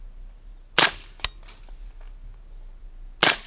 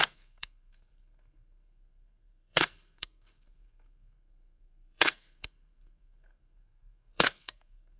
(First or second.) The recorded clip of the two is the first